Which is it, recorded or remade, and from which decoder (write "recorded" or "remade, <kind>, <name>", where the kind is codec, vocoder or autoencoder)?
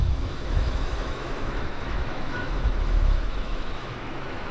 remade, autoencoder, DAC-VAE